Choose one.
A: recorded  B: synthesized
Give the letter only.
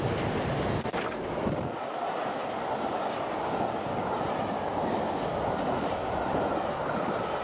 A